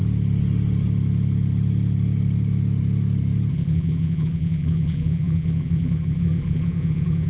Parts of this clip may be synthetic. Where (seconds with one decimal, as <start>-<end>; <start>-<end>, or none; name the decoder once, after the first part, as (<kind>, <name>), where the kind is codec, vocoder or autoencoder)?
3.5-7.3 (vocoder, BigVGAN v2)